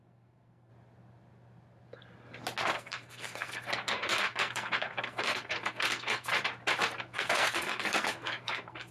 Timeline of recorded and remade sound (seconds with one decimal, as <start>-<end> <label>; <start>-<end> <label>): 0.0-0.7 remade; 0.7-2.7 recorded; 2.7-6.3 remade; 6.3-7.0 recorded; 7.0-8.9 remade